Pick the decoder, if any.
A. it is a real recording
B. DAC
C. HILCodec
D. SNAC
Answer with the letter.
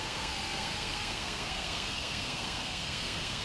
D